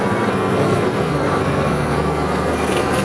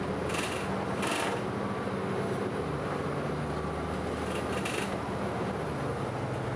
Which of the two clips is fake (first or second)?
first